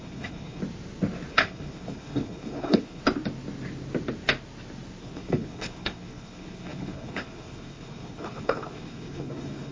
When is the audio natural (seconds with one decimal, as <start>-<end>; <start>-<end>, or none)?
0.6-1.3; 3.0-5.0